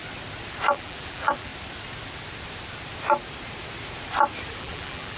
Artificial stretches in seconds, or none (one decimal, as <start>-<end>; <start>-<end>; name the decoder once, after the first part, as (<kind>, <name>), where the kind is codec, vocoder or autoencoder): 0.7-1.5 (vocoder, BigVGAN v2); 4.6-5.2